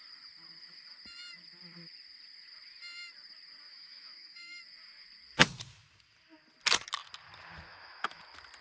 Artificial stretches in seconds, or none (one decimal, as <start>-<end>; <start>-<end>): 3.7-4.6; 7.7-8.2